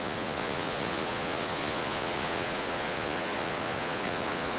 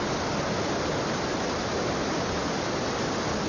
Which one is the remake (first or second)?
first